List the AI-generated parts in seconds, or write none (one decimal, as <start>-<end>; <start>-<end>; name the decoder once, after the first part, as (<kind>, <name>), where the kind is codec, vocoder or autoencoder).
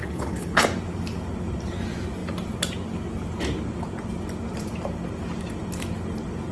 0.0-0.6 (codec, HILCodec)